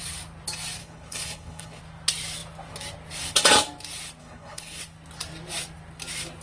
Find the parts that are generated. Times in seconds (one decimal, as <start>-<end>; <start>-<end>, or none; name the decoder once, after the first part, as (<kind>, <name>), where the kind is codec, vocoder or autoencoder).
0.8-1.8 (codec, HILCodec); 4.2-4.8